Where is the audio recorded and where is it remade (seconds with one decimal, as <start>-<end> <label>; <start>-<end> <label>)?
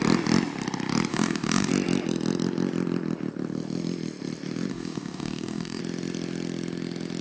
0.0-1.1 recorded; 1.1-1.7 remade; 1.7-4.7 recorded; 4.7-5.8 remade; 5.8-7.2 recorded